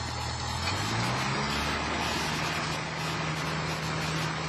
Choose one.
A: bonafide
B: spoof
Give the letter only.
A